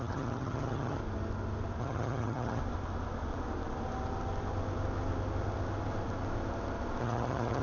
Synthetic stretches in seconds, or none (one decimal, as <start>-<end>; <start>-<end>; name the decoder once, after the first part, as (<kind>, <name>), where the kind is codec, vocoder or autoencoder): 0.0-1.0 (vocoder, HiFi-GAN); 1.8-2.6; 7.0-7.6

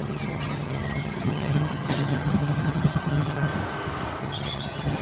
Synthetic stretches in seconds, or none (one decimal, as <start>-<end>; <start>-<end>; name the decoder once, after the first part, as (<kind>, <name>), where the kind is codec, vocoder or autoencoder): 0.0-3.5 (vocoder, HiFi-GAN); 4.2-5.0

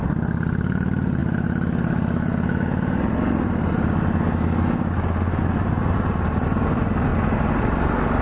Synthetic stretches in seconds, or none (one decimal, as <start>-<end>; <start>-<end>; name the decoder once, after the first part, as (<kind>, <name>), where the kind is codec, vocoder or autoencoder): none